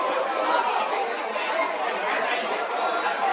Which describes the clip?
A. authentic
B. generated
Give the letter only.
A